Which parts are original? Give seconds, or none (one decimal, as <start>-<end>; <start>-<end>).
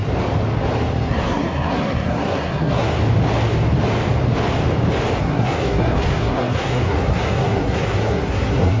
0.0-1.1; 3.0-5.2